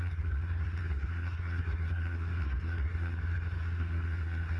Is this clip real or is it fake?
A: fake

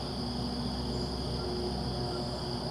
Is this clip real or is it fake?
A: real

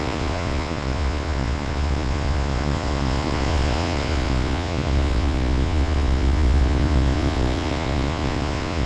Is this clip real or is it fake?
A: fake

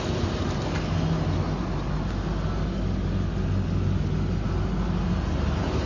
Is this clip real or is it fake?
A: real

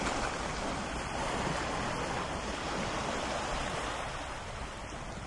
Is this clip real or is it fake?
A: fake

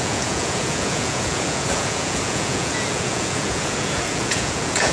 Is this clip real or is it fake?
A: fake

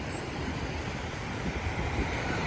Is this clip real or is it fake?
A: fake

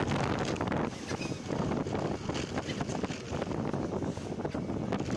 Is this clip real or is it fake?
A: real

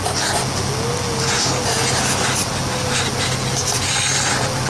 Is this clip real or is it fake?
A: real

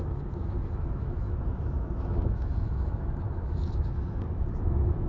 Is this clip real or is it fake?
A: fake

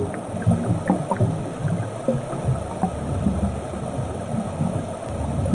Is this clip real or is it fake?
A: real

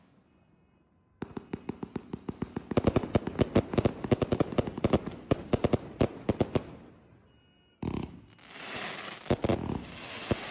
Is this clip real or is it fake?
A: real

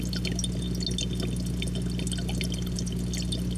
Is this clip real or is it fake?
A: real